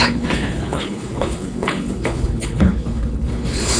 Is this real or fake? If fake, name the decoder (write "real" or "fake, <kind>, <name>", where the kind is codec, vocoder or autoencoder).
fake, codec, HILCodec